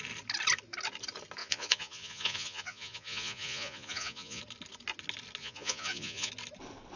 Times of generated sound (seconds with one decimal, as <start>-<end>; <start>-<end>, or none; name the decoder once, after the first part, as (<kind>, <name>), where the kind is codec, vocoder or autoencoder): 1.4-4.4 (vocoder, Vocos); 5.4-6.3